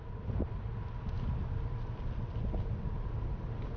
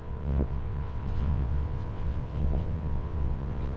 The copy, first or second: second